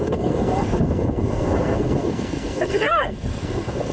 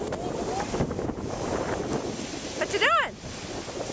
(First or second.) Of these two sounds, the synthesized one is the first